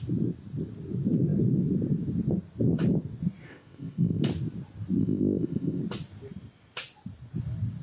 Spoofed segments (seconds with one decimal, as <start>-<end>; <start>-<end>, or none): 3.5-4.2; 5.0-5.8